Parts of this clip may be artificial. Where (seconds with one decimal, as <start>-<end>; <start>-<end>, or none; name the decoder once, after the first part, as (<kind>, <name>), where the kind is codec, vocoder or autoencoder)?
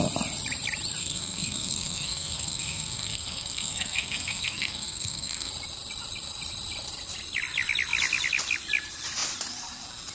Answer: 1.0-5.5 (codec, SNAC)